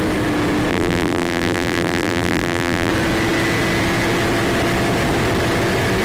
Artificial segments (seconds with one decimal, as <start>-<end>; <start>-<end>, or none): 0.7-2.9